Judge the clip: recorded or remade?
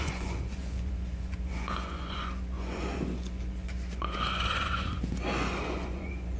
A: remade